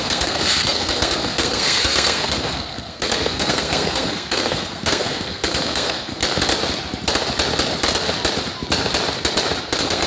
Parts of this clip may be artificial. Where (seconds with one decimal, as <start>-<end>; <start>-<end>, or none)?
0.0-6.2; 9.6-10.1